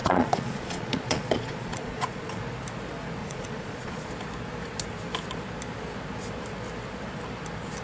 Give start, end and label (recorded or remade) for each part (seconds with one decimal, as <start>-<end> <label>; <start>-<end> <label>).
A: 0.0-2.4 remade; 2.4-3.2 recorded; 3.2-4.1 remade; 4.1-7.8 recorded

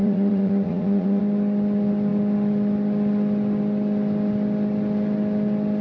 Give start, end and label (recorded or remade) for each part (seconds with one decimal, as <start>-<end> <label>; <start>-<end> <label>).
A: 0.0-1.2 remade; 1.2-5.8 recorded

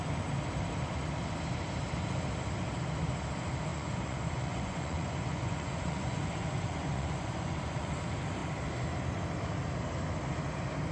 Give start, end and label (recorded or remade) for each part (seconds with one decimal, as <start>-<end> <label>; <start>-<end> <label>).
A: 0.0-3.7 recorded; 3.7-8.0 remade; 8.0-10.9 recorded

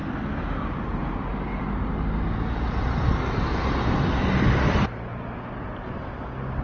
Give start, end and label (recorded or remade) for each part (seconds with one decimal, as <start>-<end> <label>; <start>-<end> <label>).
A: 0.0-6.6 recorded

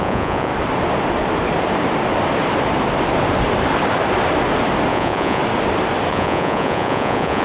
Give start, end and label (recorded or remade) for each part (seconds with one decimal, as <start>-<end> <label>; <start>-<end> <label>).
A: 0.0-0.5 remade; 0.5-4.9 recorded; 4.9-5.4 remade; 5.4-6.1 recorded; 6.1-7.4 remade